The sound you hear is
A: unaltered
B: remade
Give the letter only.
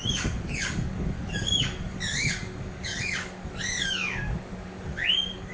B